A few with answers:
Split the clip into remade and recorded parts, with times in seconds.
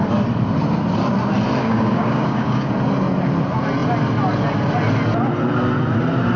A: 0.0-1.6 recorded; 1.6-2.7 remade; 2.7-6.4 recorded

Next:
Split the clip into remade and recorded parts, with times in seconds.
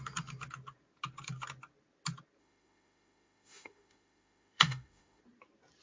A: 0.0-2.4 recorded; 2.4-5.2 remade; 5.2-5.8 recorded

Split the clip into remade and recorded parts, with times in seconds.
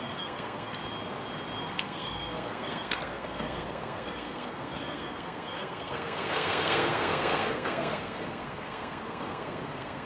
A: 0.0-0.8 remade; 0.8-1.7 recorded; 1.7-10.1 remade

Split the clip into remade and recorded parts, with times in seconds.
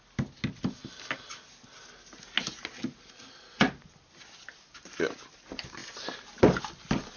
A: 0.0-7.2 recorded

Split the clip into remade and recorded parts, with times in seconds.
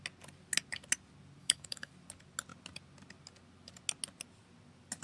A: 0.0-1.4 recorded; 1.4-1.9 remade; 1.9-5.0 recorded